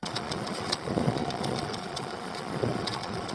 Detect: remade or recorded remade